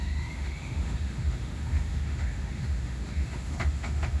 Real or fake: fake